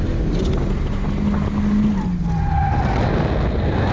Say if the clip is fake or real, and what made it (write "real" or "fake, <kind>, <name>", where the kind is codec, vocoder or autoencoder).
real